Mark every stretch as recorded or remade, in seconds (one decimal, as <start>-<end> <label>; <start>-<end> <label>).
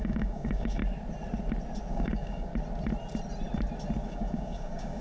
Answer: 0.0-0.8 remade; 0.8-1.9 recorded; 1.9-2.5 remade; 2.5-4.1 recorded; 4.1-5.0 remade